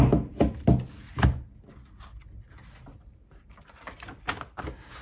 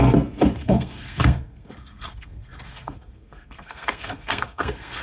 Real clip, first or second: first